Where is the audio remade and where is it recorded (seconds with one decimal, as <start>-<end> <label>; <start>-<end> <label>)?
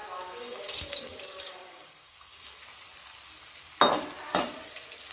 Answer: 0.0-2.6 remade; 2.6-5.1 recorded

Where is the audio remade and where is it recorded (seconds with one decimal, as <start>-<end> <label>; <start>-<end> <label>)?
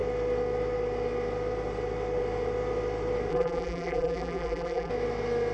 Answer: 0.0-3.3 recorded; 3.3-4.9 remade; 4.9-5.5 recorded